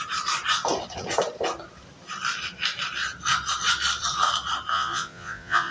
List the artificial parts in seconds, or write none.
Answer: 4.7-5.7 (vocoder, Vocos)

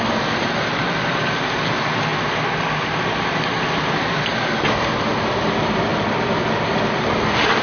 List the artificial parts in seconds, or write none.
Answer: none